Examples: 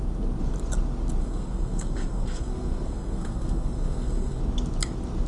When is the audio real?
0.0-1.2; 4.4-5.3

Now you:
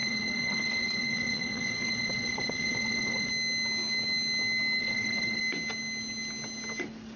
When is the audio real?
3.3-4.8; 5.4-7.2

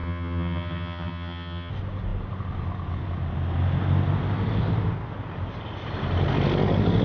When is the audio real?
1.7-7.0

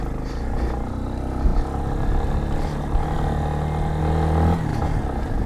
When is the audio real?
0.0-5.5

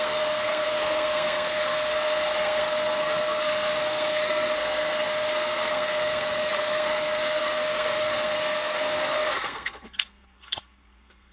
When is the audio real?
none